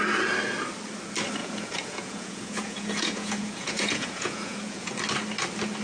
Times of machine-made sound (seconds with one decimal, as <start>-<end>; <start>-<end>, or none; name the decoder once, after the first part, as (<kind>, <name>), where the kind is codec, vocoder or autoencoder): 1.4-4.9 (vocoder, Vocos)